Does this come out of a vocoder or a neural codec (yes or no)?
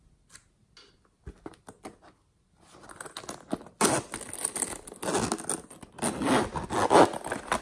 no